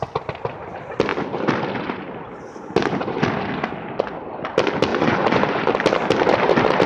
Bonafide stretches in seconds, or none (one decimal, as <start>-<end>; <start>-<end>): 0.0-4.9; 5.7-6.9